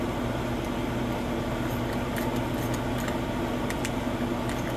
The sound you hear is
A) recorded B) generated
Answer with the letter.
A